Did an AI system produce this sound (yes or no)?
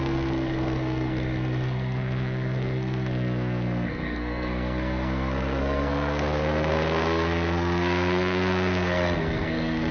yes